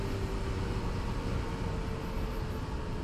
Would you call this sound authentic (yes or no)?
yes